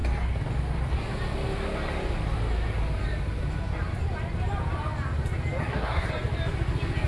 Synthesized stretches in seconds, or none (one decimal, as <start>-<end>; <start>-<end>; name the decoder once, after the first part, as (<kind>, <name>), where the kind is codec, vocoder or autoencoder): 5.6-6.1 (codec, SNAC)